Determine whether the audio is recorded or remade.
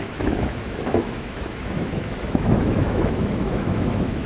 remade